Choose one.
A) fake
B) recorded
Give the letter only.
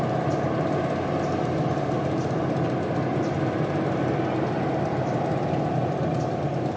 B